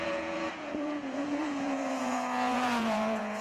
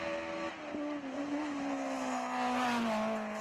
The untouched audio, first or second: second